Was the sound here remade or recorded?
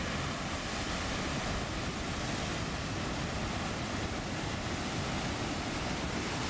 recorded